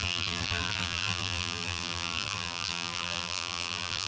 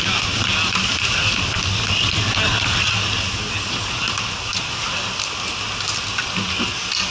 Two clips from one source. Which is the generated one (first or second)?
first